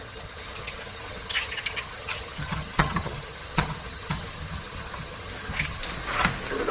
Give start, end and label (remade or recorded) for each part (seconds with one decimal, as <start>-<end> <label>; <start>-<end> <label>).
0.0-5.8 remade; 5.8-6.7 recorded